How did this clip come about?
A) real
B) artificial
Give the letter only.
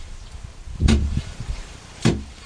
B